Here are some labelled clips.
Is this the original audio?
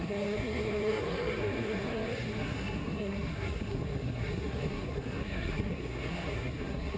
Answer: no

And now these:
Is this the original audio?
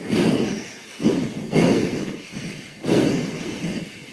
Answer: no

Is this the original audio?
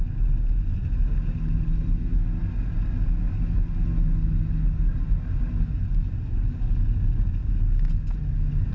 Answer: yes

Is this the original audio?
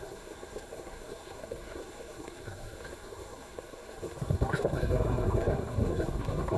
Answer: no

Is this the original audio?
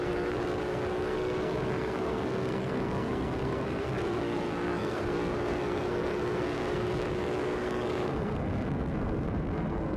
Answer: no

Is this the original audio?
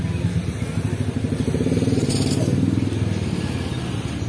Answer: yes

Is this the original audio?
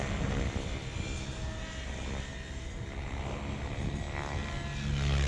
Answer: yes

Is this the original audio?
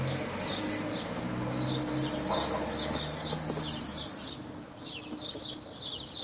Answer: yes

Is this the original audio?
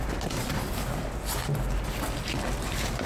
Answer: yes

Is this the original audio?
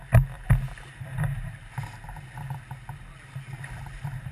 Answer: yes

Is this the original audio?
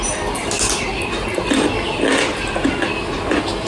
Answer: yes